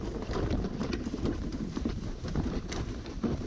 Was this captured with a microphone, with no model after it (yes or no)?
yes